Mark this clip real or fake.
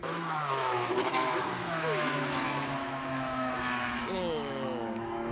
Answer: fake